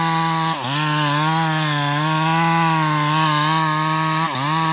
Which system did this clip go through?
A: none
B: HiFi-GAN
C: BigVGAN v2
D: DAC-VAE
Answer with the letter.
A